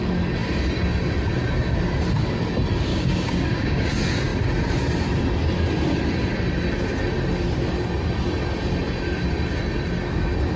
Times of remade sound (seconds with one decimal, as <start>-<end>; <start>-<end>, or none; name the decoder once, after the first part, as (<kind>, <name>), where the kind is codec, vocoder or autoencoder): 2.9-3.9 (codec, DAC)